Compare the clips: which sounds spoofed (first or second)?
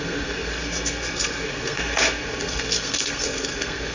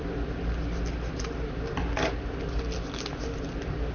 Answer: first